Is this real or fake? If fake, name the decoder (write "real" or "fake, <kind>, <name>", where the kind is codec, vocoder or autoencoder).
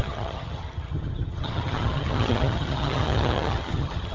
fake, vocoder, HiFi-GAN